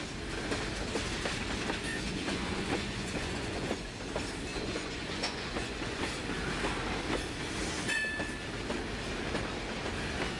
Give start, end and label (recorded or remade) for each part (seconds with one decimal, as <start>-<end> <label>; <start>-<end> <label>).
0.0-1.9 recorded; 1.9-3.9 remade; 3.9-4.5 recorded; 4.5-6.0 remade; 6.0-10.4 recorded